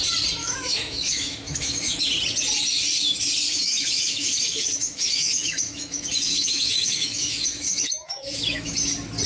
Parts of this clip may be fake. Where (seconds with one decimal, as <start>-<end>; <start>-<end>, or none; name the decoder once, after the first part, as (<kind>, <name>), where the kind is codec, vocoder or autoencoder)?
0.4-2.0 (autoencoder, DAC-VAE); 3.5-8.7